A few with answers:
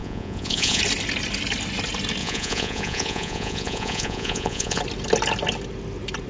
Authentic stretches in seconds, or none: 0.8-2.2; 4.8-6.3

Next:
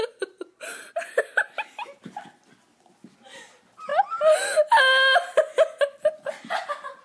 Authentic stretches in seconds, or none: 0.0-7.0

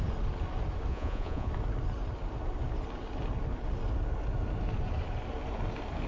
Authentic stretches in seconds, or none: 0.0-0.9; 1.5-6.1

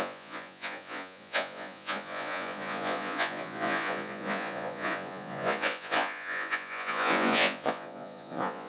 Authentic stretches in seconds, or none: none